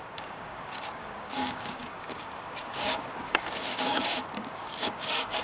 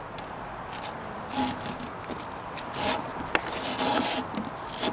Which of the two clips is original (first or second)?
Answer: second